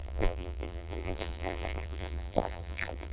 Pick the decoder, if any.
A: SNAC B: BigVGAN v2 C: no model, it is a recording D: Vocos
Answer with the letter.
B